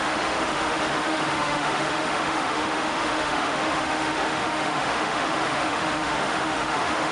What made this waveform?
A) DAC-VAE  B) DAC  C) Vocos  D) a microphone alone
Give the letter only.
A